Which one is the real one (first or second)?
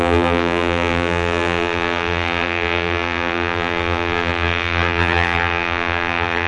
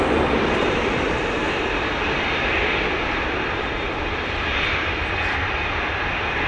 second